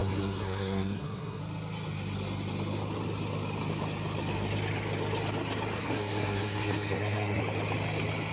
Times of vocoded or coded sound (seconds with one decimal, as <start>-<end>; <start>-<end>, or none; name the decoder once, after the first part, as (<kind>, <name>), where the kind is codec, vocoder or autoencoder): 0.0-1.4 (codec, SNAC); 5.8-7.4